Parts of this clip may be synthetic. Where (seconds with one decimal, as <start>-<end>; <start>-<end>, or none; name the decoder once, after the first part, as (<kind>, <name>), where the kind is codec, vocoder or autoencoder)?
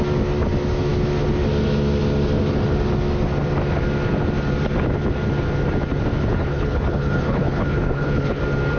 6.1-8.4 (codec, HILCodec)